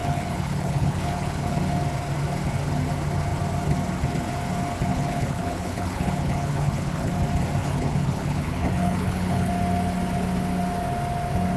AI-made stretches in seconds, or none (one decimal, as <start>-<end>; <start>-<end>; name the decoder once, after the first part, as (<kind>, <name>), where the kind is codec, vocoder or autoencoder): 0.0-1.6 (codec, HILCodec); 4.9-7.1; 7.6-9.5